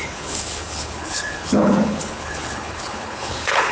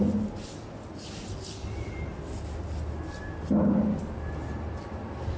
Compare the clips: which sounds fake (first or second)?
first